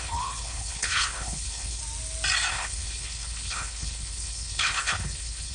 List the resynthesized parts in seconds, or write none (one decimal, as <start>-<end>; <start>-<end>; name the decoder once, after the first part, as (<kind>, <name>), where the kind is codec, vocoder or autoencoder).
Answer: 0.0-1.8 (codec, HILCodec); 2.5-5.5